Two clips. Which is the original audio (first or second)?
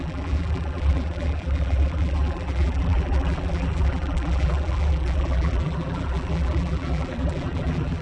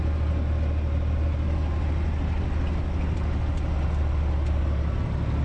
second